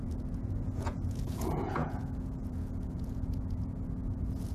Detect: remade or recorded remade